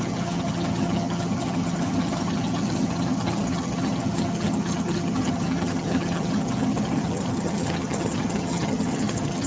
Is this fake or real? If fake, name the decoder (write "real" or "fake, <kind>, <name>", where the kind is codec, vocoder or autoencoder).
fake, vocoder, HiFi-GAN